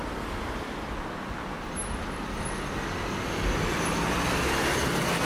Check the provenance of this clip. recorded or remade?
recorded